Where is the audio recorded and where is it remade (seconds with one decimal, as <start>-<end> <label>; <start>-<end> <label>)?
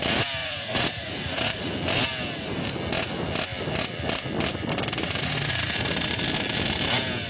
0.0-0.4 recorded; 0.4-1.7 remade; 1.7-5.0 recorded; 5.0-6.2 remade; 6.2-7.3 recorded